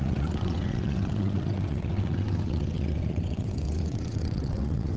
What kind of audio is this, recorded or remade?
remade